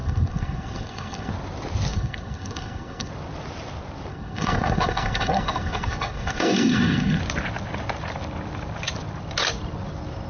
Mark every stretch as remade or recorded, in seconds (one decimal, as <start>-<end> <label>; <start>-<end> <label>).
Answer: 0.0-1.3 remade; 1.3-1.9 recorded; 1.9-3.1 remade; 3.1-4.1 recorded; 4.1-7.2 remade; 7.2-10.3 recorded